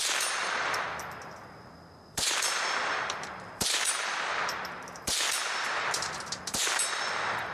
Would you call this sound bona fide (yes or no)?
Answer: no